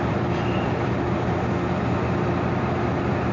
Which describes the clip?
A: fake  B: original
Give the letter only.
A